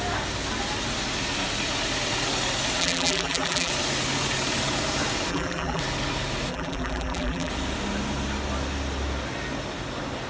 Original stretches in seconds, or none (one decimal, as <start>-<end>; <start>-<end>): 0.0-2.8; 3.7-5.3; 5.8-6.5; 7.5-10.3